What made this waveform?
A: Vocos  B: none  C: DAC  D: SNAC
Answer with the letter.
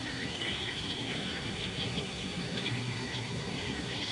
D